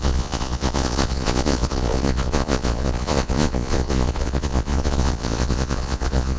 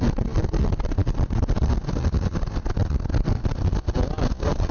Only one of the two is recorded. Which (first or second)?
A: second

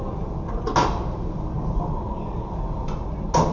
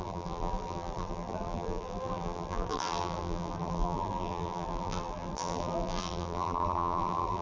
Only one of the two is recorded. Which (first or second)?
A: first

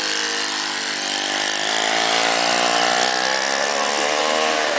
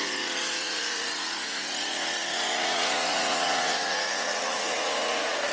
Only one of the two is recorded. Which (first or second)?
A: first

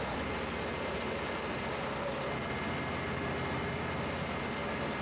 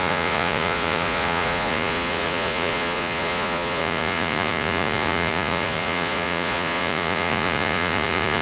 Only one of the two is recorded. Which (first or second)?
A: first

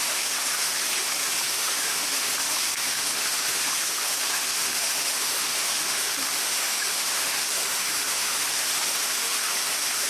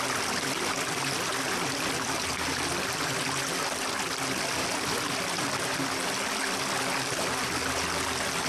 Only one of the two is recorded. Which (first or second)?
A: second